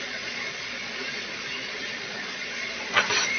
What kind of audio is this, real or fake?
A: fake